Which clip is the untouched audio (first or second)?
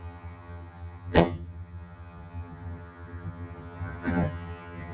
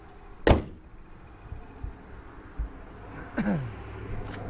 second